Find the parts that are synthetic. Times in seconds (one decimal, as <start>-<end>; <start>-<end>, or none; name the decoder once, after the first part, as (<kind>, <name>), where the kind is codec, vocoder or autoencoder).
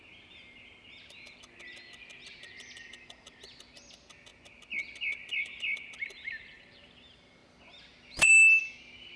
none